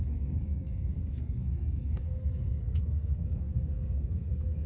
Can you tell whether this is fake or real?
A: fake